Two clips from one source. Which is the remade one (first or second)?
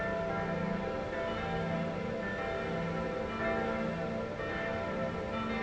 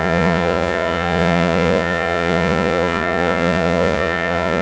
second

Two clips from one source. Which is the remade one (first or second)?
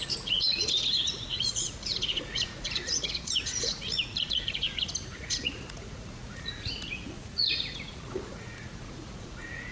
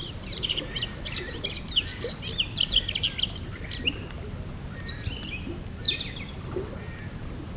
first